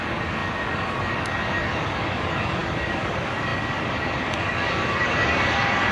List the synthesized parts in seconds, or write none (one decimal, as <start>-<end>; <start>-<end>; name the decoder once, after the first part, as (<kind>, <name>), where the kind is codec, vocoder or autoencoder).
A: 0.0-5.9 (codec, DAC)